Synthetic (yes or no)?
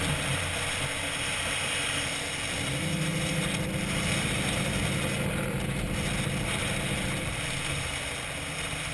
no